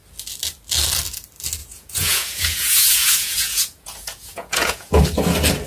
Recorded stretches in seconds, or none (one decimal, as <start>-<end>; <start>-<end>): 0.0-1.6; 5.0-5.7